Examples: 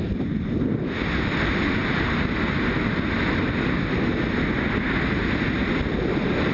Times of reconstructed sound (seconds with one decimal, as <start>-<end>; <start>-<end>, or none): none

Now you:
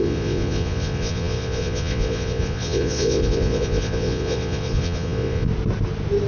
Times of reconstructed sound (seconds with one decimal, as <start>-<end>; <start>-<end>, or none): 0.0-5.5

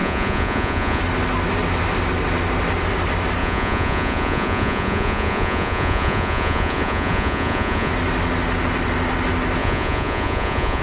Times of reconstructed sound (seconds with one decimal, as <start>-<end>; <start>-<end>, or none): 0.0-1.0; 3.4-7.9; 9.6-10.8